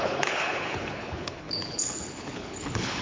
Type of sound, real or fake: fake